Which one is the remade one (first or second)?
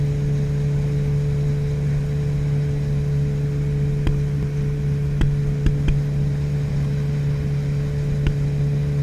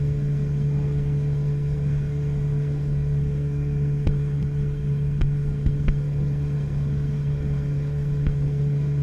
second